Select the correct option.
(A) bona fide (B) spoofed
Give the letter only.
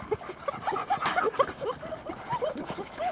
A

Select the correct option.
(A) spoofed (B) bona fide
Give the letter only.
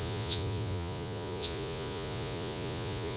A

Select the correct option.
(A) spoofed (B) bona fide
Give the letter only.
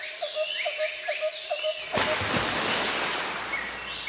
B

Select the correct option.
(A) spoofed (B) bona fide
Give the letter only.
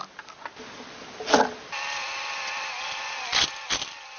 B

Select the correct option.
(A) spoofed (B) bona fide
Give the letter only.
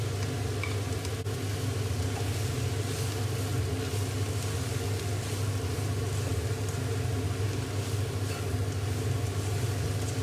B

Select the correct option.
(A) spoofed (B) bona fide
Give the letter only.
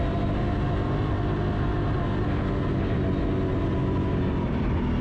B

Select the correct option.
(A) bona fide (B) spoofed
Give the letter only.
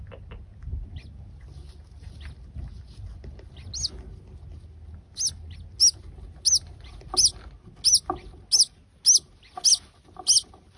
A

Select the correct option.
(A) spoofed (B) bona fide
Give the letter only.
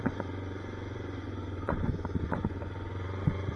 A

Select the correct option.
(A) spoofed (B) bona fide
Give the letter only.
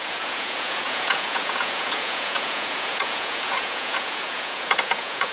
A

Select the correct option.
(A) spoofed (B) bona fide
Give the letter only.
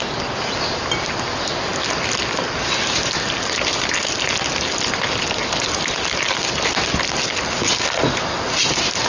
B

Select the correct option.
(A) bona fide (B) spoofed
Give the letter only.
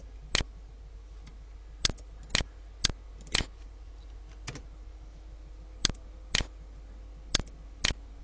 A